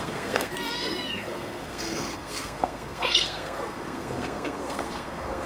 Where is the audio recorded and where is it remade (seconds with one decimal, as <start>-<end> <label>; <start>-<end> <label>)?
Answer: 0.0-5.5 remade